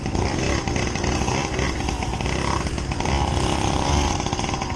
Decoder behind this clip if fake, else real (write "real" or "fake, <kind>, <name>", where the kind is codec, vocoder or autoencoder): real